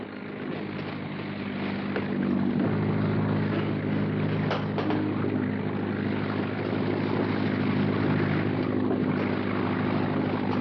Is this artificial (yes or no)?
no